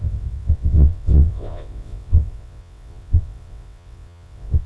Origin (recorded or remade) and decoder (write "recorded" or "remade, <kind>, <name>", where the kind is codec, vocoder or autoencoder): remade, vocoder, WaveNeXt